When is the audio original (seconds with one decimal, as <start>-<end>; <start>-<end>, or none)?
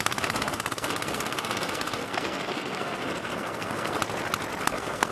4.0-4.6